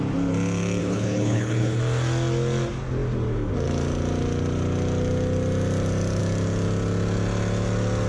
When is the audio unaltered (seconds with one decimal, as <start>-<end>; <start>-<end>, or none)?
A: 0.0-0.8; 1.8-8.1